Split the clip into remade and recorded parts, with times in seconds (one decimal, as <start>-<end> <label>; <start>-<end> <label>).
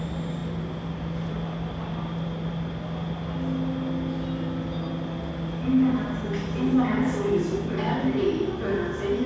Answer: 0.0-9.3 recorded